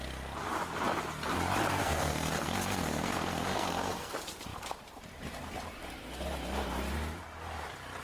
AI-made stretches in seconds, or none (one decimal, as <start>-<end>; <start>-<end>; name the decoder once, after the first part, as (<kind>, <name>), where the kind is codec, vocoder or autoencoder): 1.8-4.1 (codec, SNAC)